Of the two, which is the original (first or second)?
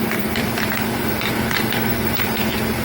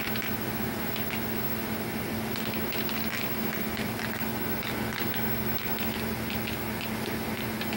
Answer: second